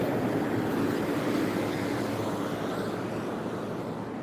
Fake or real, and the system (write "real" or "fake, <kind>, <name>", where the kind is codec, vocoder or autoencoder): real